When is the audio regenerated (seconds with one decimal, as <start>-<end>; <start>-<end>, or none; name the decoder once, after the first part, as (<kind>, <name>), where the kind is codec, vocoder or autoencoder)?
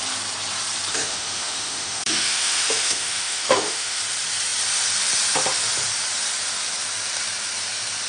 0.9-4.0 (autoencoder, DAC-VAE)